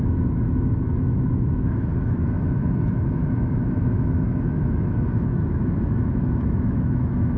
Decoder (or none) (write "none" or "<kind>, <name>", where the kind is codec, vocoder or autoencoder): autoencoder, DAC-VAE